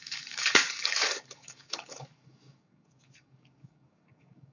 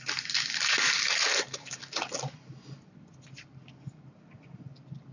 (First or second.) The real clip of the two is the second